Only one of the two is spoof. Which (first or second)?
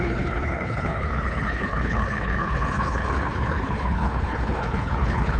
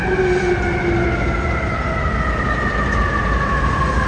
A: first